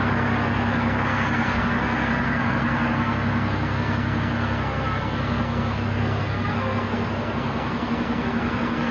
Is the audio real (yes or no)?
no